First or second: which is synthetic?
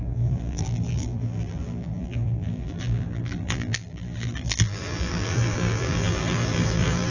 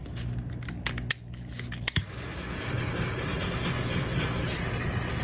first